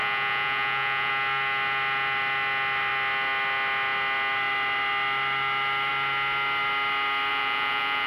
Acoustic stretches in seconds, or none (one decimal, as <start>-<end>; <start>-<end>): 1.1-7.3